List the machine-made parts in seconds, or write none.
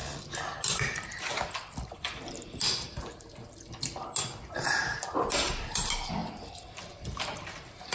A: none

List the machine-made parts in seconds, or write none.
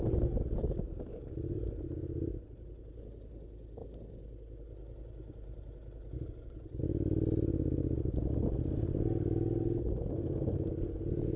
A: none